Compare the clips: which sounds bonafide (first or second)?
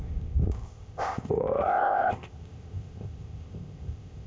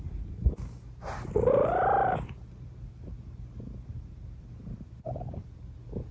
second